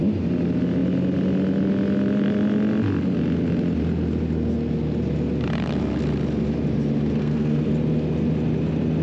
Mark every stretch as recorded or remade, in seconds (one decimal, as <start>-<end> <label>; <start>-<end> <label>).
0.0-7.2 recorded; 7.2-7.7 remade; 7.7-9.0 recorded